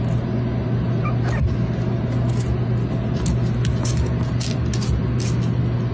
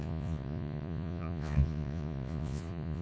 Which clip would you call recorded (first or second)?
first